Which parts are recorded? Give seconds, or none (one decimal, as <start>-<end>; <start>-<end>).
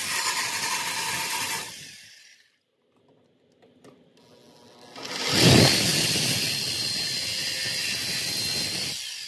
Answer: 0.0-9.3